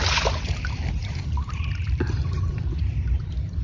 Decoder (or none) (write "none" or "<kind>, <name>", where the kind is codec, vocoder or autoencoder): vocoder, BigVGAN v2